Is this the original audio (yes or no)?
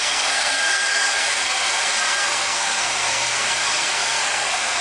no